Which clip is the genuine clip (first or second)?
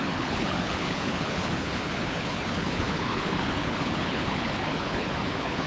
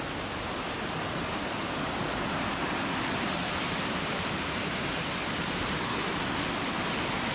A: second